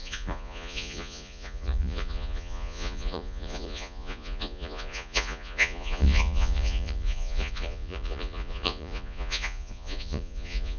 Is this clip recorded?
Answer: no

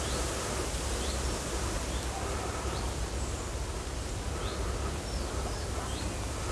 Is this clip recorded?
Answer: yes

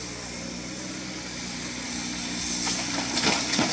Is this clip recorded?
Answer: yes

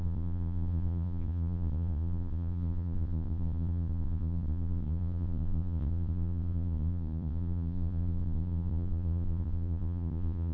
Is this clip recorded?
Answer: no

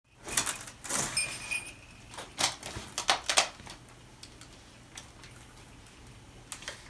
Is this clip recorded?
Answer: yes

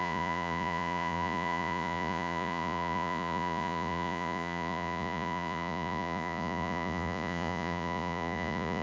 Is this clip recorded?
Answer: no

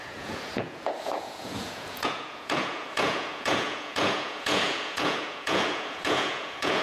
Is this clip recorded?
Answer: no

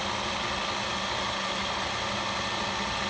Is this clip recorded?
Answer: yes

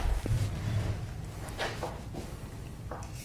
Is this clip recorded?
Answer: yes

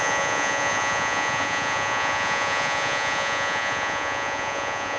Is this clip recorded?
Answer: no